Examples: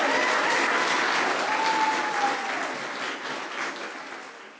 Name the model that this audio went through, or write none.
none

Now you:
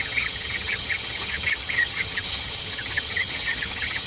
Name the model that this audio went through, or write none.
vocoder, HiFi-GAN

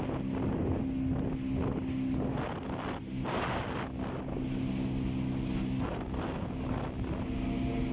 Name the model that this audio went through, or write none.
none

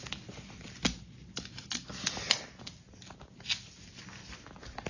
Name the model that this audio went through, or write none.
none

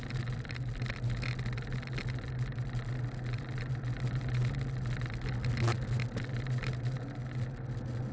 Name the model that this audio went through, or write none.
none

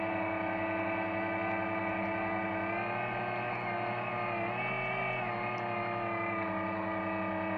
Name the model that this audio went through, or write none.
none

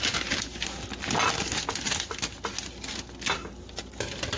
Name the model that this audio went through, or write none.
none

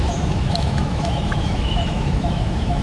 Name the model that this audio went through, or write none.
autoencoder, DAC-VAE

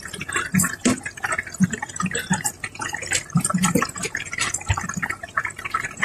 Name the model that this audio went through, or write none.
none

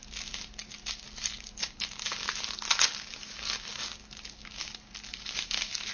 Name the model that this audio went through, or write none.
codec, DAC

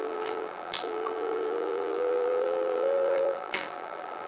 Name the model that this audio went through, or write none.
vocoder, BigVGAN v2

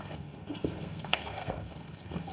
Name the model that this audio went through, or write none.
codec, SNAC